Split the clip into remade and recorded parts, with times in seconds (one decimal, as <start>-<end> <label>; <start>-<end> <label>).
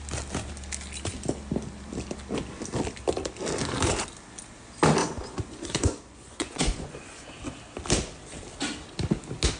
0.0-5.0 recorded; 5.0-7.3 remade; 7.3-9.6 recorded